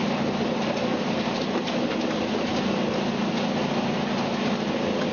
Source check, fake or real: real